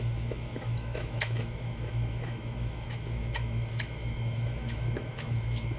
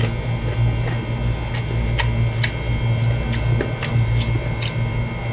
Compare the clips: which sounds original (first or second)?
second